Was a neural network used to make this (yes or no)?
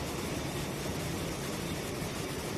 no